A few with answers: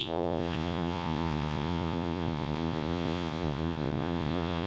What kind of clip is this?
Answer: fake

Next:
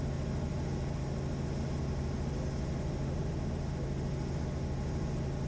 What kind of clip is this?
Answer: real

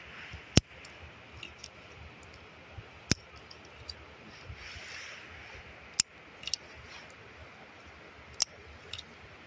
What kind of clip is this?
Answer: real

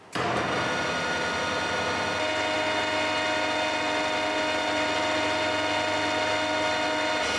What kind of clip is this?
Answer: real